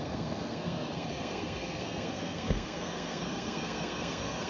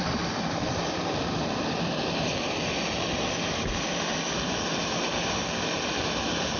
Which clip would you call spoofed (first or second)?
first